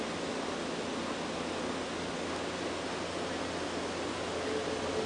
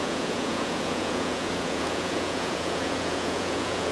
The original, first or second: first